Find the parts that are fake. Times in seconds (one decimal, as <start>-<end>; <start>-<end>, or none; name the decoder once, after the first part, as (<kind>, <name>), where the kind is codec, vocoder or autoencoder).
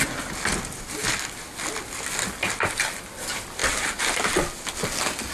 none